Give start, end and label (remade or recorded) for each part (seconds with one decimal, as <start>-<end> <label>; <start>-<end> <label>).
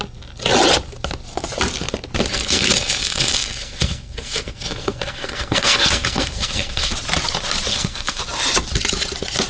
0.0-2.3 recorded; 2.3-6.9 remade; 6.9-7.7 recorded; 7.7-8.2 remade; 8.2-9.5 recorded